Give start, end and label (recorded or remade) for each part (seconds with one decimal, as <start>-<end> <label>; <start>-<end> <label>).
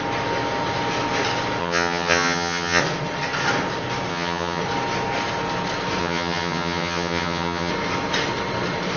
0.0-1.6 recorded; 1.6-2.8 remade; 2.8-4.1 recorded; 4.1-4.6 remade; 4.6-6.0 recorded; 6.0-7.7 remade; 7.7-9.0 recorded